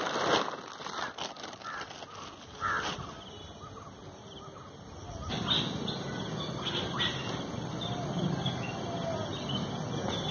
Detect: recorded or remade recorded